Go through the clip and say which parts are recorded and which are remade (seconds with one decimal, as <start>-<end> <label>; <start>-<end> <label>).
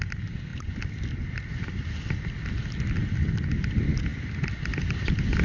0.0-5.4 recorded